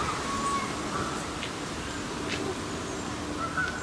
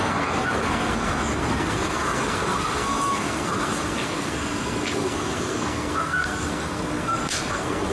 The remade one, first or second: second